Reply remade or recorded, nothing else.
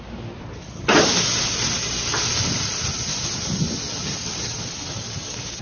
recorded